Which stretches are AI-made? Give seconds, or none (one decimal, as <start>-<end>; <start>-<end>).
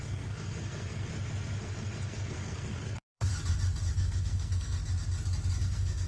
0.0-1.1; 1.6-3.3; 3.9-4.8; 5.6-6.1